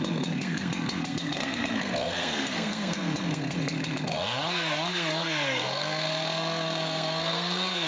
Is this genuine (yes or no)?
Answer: no